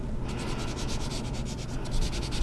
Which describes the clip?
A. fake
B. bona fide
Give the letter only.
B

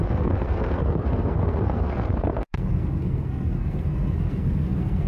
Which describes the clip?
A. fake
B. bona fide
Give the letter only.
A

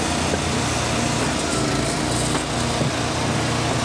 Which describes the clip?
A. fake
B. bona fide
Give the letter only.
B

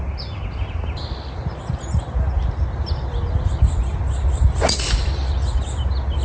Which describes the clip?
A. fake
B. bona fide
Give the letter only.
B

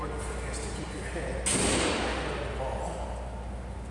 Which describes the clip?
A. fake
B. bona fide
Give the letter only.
B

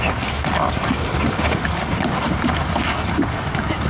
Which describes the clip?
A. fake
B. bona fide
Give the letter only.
B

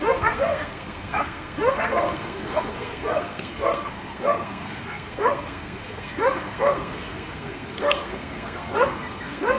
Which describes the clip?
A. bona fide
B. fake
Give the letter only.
B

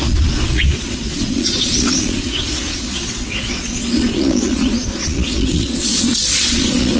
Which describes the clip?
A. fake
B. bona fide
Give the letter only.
A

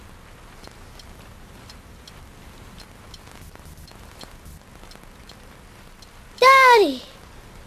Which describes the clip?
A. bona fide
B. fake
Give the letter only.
A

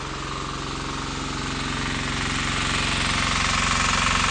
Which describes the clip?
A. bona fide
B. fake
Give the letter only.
A